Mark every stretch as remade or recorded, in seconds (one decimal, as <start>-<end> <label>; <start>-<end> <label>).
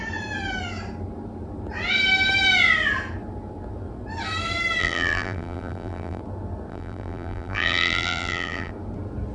0.0-4.8 recorded; 4.8-6.2 remade; 6.2-6.7 recorded; 6.7-8.7 remade; 8.7-9.3 recorded